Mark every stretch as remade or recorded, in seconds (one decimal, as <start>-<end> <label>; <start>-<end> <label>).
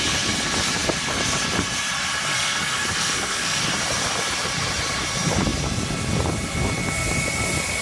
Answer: 0.0-2.3 recorded; 2.3-3.6 remade; 3.6-7.8 recorded